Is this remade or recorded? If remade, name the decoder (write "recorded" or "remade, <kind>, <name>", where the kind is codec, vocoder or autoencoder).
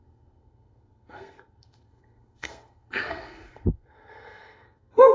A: remade, codec, SNAC